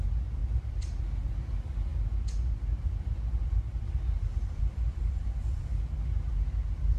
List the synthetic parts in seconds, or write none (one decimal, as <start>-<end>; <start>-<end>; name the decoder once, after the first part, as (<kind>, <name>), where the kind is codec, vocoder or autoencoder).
0.4-1.0 (vocoder, BigVGAN v2); 4.3-5.6